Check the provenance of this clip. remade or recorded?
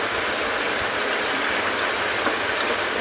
recorded